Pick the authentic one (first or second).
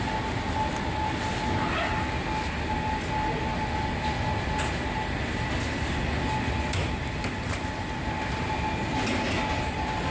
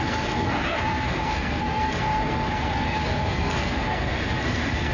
first